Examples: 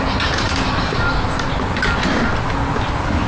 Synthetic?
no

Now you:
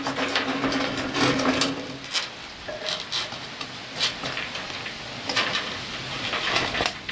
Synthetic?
no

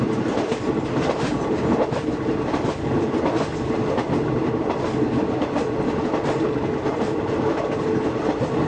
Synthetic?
no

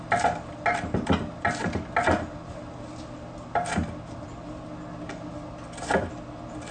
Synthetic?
no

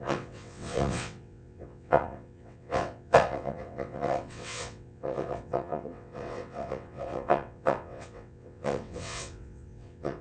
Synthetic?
yes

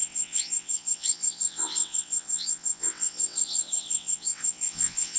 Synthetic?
yes